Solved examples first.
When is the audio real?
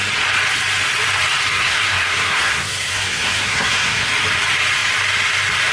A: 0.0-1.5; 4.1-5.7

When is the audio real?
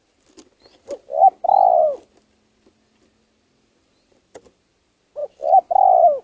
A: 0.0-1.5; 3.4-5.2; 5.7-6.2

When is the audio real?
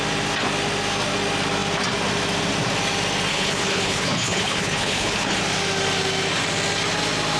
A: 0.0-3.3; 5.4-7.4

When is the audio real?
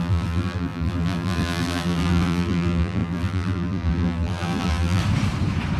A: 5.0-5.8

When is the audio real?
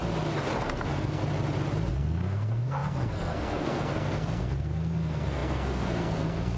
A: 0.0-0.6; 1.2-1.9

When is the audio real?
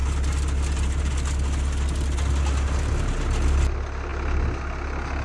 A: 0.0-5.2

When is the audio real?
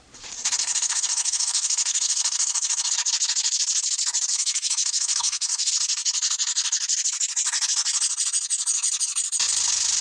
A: 0.0-0.6; 2.9-4.3; 5.7-10.0